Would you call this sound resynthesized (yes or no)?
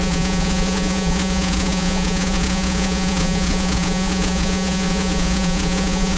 yes